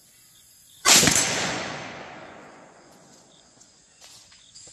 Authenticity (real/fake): fake